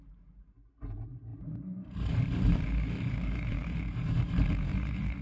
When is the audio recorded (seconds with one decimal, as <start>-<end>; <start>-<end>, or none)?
none